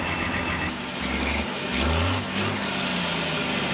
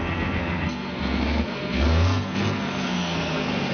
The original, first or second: first